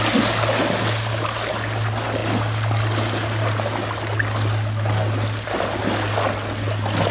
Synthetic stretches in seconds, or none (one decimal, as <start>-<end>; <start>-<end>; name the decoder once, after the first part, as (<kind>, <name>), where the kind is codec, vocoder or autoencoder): none